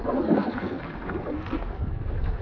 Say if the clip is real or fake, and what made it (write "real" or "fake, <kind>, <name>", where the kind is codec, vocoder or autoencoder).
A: fake, codec, SNAC